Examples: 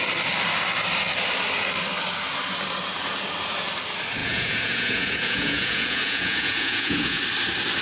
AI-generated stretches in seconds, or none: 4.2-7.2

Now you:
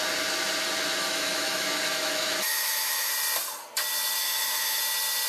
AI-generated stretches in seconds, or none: 1.0-3.1; 4.2-4.8

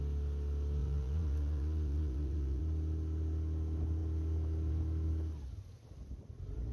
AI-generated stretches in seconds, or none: 0.8-2.6

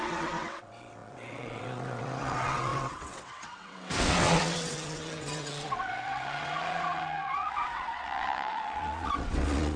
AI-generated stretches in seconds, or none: 0.0-9.8

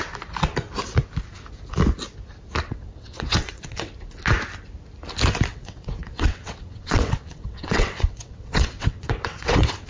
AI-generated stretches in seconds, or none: 2.7-3.9; 5.5-9.9

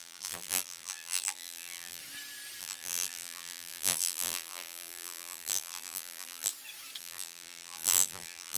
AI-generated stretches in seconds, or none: 0.0-2.0; 2.6-6.5; 7.0-8.6

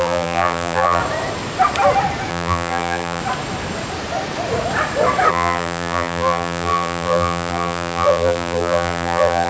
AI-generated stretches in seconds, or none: 0.0-1.0; 2.3-3.2; 5.3-9.5